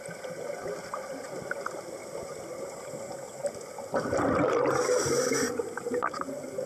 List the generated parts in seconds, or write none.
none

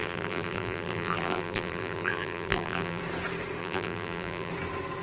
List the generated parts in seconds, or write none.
0.0-3.0 (vocoder, BigVGAN v2); 3.6-4.5

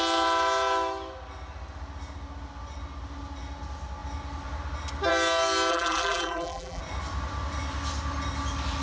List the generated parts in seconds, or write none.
5.7-6.8 (vocoder, BigVGAN v2)

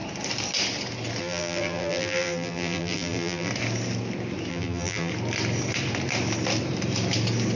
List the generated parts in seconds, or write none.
1.2-3.5 (vocoder, BigVGAN v2); 4.5-5.1

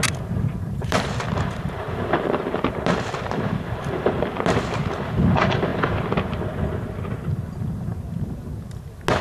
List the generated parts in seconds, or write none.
0.5-5.0 (vocoder, BigVGAN v2)